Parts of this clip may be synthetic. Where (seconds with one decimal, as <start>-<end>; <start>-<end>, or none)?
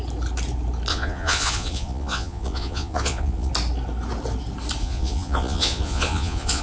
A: 0.9-3.5; 4.8-6.6